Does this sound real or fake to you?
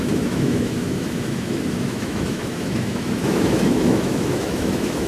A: fake